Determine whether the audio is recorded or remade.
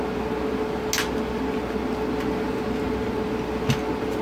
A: recorded